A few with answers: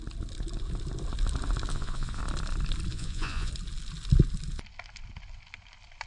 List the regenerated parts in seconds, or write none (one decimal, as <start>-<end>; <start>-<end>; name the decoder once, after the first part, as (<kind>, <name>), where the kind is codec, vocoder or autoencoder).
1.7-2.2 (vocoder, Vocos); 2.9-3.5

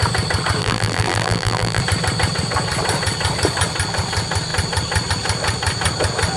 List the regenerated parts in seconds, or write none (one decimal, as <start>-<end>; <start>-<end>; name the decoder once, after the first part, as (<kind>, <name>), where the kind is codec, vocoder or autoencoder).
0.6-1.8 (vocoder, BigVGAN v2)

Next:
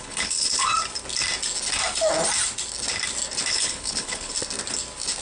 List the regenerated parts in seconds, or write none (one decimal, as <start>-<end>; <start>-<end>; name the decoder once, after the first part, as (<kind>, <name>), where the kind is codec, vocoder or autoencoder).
0.0-0.7 (codec, HILCodec); 3.5-4.3

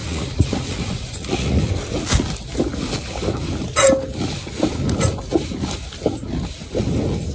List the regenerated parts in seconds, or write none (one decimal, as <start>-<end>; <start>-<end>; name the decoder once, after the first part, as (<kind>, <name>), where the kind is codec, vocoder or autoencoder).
0.0-1.7 (vocoder, Vocos)

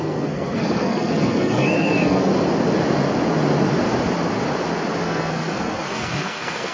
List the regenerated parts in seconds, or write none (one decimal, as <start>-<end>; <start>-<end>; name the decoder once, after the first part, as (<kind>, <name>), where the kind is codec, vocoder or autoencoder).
0.0-2.3 (codec, SNAC); 5.0-6.7

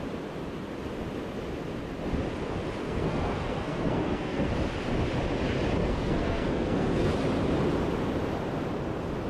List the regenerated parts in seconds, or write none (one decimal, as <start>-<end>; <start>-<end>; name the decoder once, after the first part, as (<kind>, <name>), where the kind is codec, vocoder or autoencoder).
2.8-4.5 (codec, SNAC); 5.8-7.1

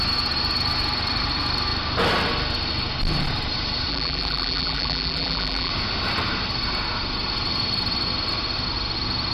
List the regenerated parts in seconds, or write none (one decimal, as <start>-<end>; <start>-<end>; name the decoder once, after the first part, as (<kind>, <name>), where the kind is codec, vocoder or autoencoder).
3.9-5.7 (vocoder, BigVGAN v2)

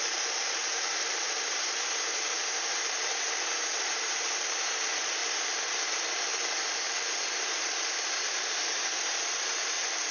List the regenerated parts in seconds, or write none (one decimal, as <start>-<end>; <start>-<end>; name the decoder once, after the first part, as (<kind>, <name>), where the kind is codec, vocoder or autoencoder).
0.0-5.2 (vocoder, BigVGAN v2); 6.6-10.1